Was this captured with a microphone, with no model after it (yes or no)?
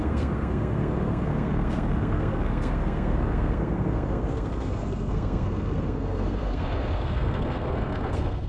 no